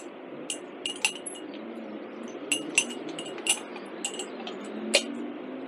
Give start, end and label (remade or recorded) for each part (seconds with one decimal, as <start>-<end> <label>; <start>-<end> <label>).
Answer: 0.0-5.7 recorded